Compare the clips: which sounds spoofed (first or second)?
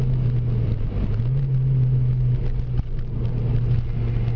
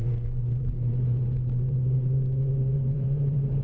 second